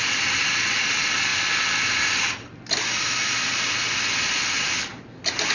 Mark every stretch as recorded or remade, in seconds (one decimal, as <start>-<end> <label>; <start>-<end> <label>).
0.0-5.5 recorded